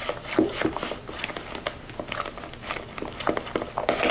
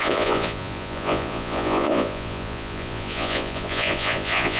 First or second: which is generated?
second